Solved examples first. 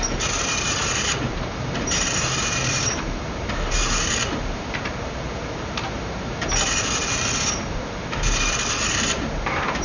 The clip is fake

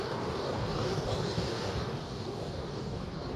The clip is fake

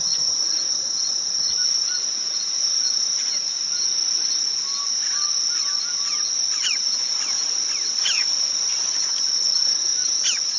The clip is real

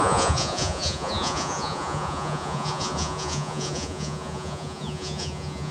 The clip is fake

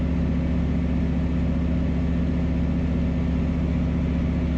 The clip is real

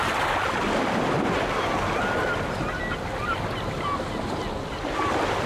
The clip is real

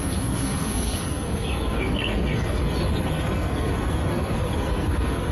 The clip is fake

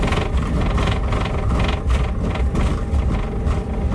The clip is real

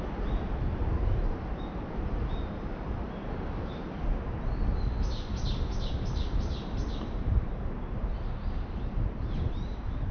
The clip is real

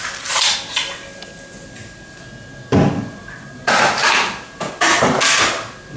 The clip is real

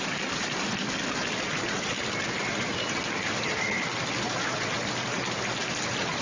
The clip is real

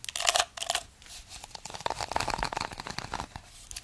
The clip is real